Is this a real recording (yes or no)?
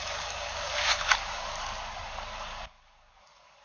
no